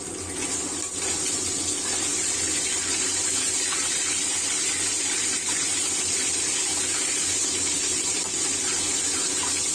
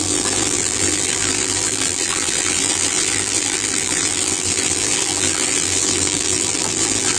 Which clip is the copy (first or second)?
second